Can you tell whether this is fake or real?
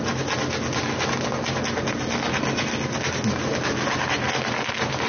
real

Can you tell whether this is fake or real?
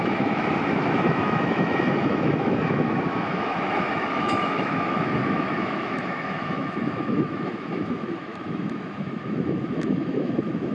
fake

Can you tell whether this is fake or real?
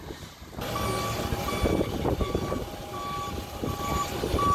real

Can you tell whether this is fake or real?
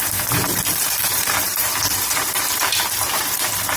fake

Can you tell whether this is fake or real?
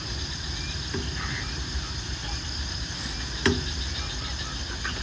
real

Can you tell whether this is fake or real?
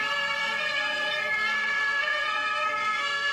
fake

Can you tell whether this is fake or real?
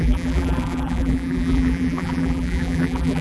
fake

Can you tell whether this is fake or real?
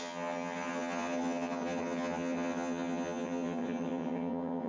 fake